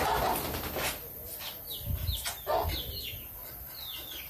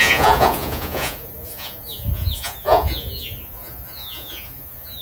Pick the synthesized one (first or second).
second